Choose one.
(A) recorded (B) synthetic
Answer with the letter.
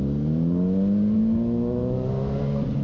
A